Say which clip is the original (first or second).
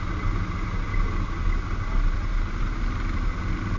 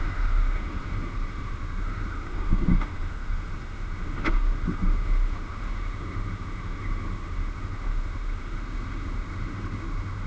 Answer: first